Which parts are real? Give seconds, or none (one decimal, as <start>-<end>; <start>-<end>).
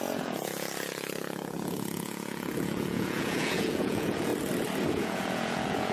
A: 4.3-4.9